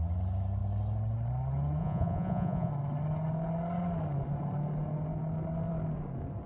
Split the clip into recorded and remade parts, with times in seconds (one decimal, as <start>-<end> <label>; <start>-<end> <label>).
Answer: 0.0-1.8 recorded; 1.8-2.7 remade; 2.7-6.5 recorded